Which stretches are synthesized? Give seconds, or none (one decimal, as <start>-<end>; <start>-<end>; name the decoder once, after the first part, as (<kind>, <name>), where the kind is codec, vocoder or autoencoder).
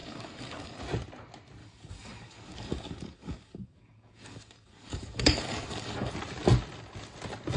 0.0-0.8 (codec, DAC); 1.6-6.1